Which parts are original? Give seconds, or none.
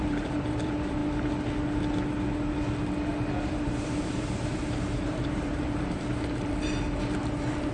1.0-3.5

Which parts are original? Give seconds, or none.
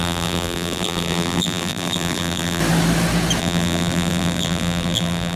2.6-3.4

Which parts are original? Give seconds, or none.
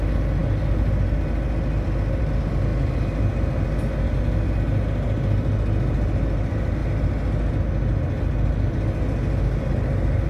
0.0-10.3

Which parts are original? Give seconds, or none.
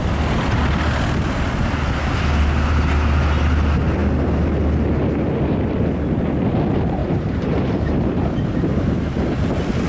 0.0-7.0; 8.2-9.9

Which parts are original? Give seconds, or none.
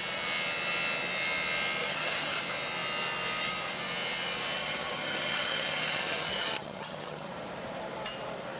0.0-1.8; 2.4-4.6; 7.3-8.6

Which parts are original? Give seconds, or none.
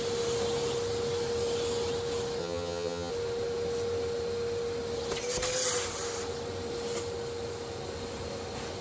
0.0-2.4; 3.1-8.8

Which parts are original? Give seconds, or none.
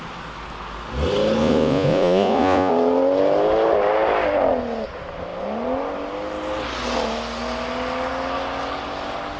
0.0-1.4; 2.7-9.4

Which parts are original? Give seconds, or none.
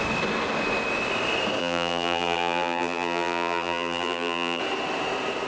0.0-1.6; 4.6-5.5